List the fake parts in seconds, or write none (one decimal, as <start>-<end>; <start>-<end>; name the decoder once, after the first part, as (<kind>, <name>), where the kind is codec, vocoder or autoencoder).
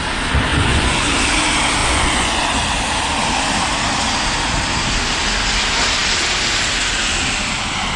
0.5-1.1 (vocoder, Vocos); 1.8-2.4